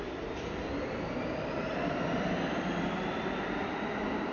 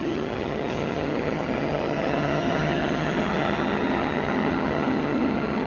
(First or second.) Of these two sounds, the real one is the first